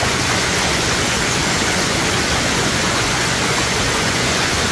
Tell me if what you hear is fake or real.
fake